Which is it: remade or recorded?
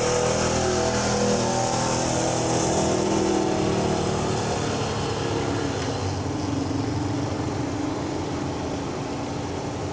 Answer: recorded